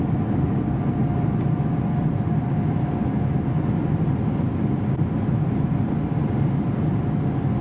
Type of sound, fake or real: real